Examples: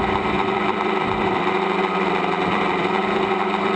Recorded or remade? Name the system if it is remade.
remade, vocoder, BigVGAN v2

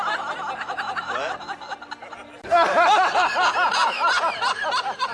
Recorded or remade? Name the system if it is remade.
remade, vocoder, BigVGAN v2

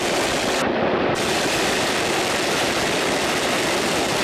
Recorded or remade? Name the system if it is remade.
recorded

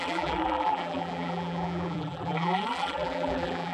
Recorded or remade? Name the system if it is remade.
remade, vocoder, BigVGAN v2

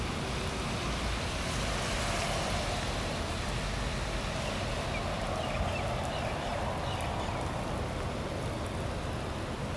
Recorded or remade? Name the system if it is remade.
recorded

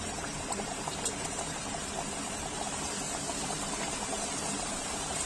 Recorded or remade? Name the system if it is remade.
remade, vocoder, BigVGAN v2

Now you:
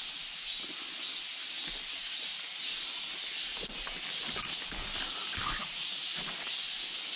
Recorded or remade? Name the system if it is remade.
recorded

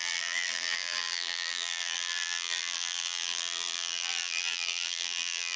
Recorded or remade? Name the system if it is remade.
remade, vocoder, BigVGAN v2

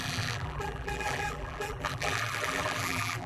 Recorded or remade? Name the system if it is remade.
remade, vocoder, BigVGAN v2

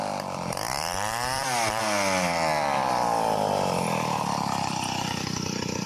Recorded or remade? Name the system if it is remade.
remade, vocoder, BigVGAN v2